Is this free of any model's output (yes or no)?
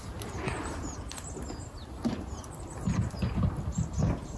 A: yes